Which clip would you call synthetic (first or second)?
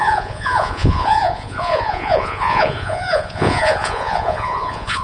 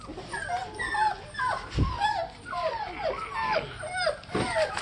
first